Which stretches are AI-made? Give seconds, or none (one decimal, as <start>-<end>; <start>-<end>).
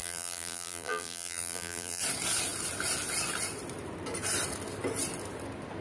0.0-2.0